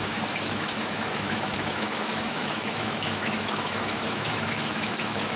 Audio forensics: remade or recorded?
remade